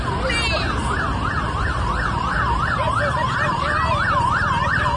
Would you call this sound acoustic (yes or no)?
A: yes